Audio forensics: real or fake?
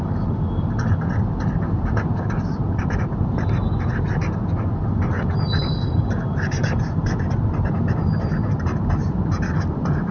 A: fake